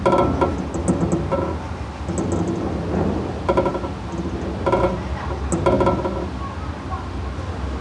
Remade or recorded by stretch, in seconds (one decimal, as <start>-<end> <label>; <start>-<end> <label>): 0.0-7.8 recorded